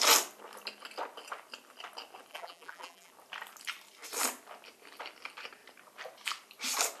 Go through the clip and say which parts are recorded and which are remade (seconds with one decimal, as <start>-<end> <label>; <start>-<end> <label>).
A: 0.0-2.3 recorded; 2.3-3.1 remade; 3.1-7.0 recorded